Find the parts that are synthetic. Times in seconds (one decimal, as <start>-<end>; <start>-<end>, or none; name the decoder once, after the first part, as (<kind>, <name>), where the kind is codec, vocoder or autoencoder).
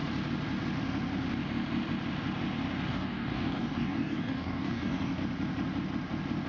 2.9-5.2 (codec, DAC)